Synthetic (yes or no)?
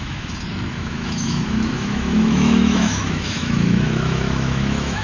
yes